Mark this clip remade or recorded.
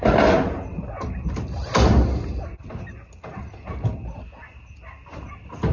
recorded